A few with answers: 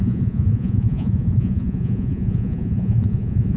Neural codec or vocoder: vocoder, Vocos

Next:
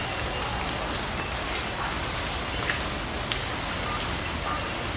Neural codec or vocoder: none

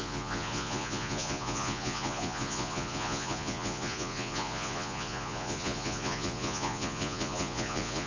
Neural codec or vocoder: vocoder, Vocos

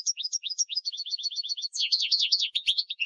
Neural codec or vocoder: vocoder, Vocos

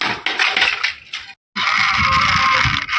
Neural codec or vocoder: none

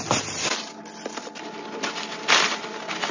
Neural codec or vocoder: none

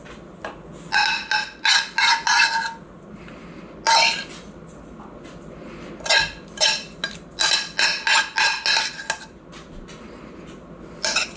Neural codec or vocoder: none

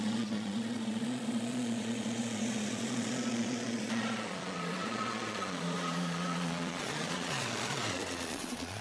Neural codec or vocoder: vocoder, Vocos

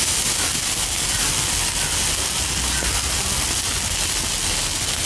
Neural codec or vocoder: none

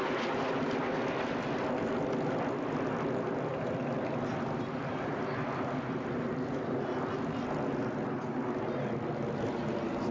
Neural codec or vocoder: none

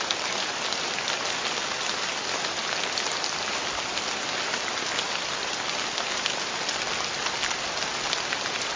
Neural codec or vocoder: none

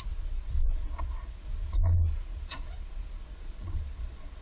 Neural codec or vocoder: vocoder, Vocos